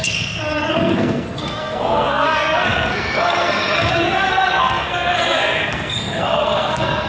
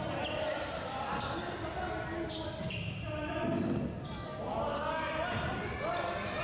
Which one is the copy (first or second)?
first